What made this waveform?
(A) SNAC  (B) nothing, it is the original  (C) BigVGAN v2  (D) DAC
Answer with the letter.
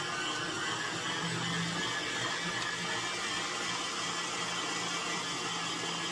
B